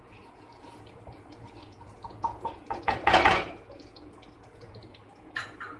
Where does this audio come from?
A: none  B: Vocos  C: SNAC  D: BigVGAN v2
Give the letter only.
B